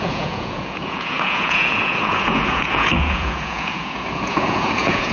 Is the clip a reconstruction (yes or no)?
yes